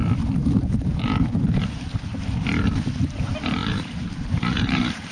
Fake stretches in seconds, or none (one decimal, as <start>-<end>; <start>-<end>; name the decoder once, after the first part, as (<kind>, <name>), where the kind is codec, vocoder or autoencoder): 0.4-1.2 (vocoder, BigVGAN v2); 3.6-5.1